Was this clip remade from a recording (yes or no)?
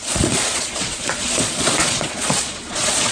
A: yes